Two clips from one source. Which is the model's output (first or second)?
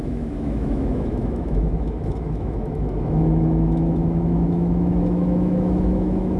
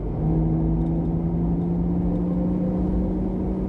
first